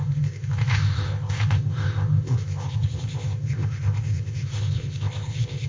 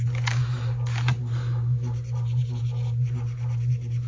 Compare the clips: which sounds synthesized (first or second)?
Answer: first